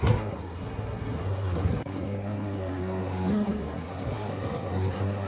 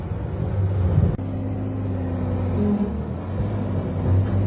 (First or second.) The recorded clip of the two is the second